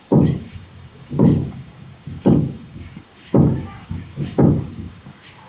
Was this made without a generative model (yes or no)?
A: no